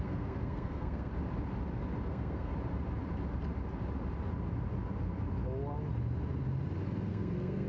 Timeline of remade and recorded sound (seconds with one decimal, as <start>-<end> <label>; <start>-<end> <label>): 0.0-1.1 remade; 1.1-2.1 recorded; 2.1-2.5 remade; 2.5-7.1 recorded; 7.1-7.7 remade